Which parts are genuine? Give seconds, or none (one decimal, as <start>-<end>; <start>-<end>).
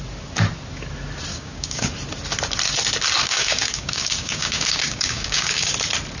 0.0-1.3; 1.9-3.2; 5.7-6.2